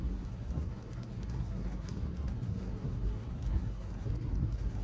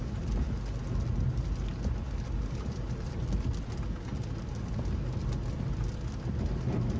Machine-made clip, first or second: first